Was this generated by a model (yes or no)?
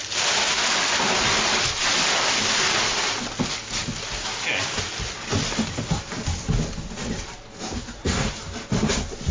no